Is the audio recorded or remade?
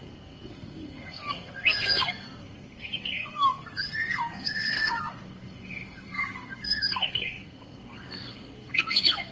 remade